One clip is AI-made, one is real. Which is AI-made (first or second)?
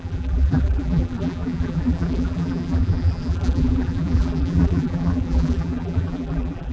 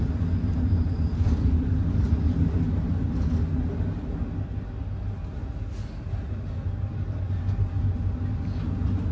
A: first